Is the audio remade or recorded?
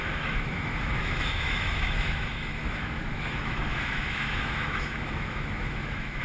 remade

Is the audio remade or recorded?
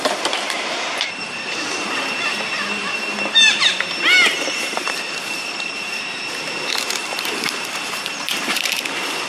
remade